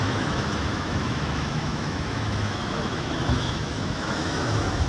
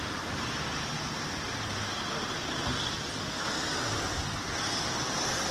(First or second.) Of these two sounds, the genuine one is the second